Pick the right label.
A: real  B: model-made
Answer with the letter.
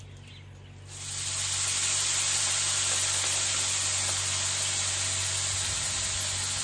A